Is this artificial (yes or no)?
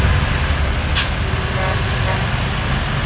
no